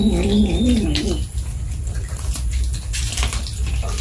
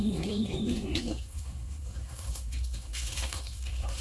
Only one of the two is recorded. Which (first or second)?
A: first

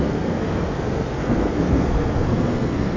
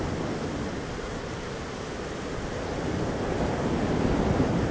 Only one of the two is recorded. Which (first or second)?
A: second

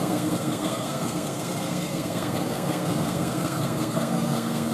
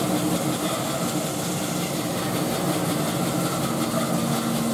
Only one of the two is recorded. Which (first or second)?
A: second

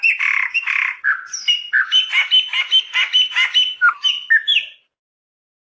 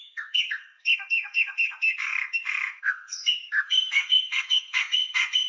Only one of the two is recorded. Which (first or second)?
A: first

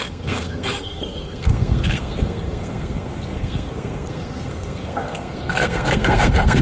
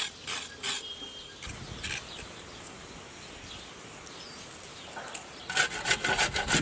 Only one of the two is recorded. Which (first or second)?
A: second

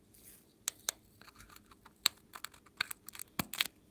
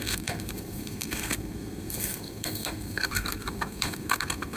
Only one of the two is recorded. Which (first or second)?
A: first